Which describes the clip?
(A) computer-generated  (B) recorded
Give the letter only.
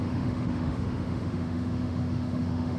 A